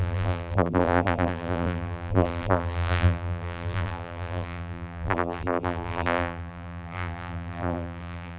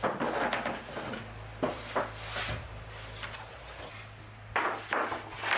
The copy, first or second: first